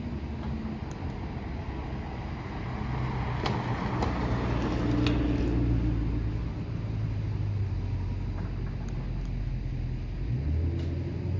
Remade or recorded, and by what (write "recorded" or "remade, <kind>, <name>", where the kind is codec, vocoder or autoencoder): recorded